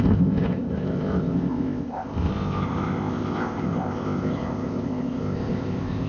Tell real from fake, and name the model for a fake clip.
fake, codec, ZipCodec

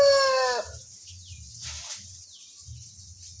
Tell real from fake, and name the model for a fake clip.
real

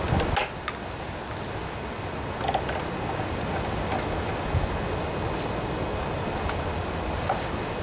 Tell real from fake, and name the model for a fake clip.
real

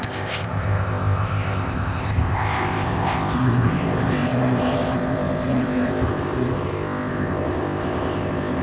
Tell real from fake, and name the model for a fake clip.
fake, codec, ZipCodec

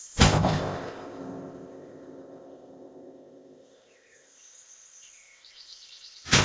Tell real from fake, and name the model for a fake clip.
fake, codec, ZipCodec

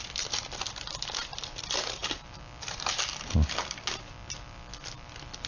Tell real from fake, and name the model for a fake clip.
real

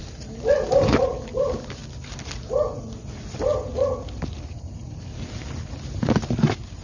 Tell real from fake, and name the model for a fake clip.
real